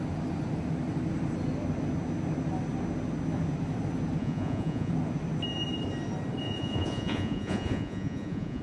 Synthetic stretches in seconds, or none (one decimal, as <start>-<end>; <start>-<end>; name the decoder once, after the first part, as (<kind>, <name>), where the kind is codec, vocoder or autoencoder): 4.2-4.9 (vocoder, Vocos); 6.4-8.6